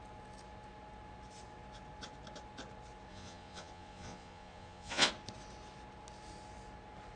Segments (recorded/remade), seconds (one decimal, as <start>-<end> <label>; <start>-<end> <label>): 0.0-3.1 recorded; 3.1-5.1 remade; 5.1-7.2 recorded